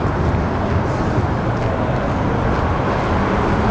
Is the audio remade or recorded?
recorded